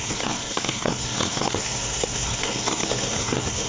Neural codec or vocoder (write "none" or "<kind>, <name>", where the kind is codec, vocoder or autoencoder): codec, SNAC